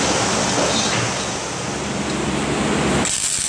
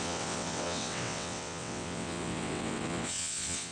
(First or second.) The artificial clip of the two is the second